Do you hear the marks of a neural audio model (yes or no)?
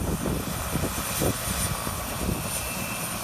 no